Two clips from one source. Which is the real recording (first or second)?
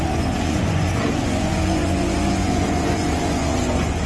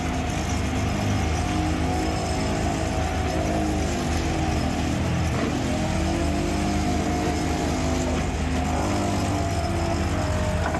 second